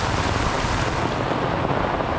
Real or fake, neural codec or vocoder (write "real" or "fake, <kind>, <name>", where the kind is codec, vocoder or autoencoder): real